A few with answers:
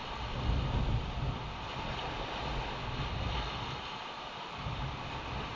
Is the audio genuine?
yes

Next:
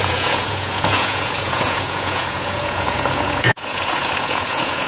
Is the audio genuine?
no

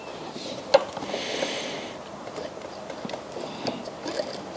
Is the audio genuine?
yes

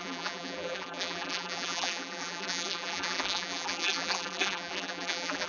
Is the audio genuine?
no